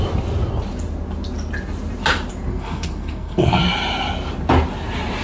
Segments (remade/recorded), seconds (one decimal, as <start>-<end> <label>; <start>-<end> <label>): 0.0-2.5 recorded; 2.5-3.6 remade; 3.6-5.2 recorded